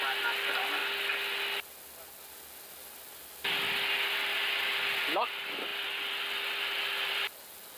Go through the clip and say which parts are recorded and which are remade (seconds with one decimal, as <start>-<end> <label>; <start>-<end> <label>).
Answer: 0.0-7.8 recorded